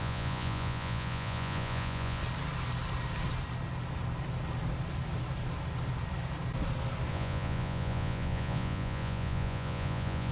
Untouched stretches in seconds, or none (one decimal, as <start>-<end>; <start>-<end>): 2.2-7.1